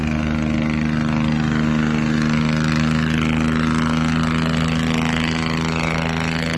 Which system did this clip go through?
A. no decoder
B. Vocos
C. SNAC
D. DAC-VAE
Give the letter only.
A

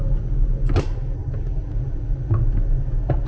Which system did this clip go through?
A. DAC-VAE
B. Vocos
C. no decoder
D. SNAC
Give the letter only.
C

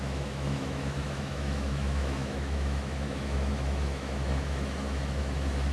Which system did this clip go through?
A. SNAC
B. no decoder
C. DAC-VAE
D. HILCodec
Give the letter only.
C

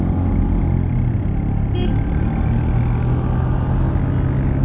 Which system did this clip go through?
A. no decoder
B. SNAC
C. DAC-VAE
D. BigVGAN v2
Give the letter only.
A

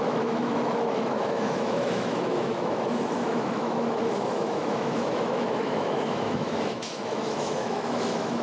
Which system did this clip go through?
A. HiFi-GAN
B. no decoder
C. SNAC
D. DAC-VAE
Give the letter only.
D